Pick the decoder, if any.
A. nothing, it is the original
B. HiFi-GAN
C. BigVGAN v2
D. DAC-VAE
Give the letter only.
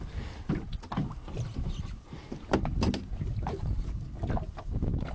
A